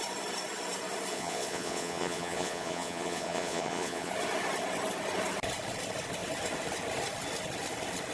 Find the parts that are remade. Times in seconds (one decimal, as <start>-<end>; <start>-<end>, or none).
1.1-4.1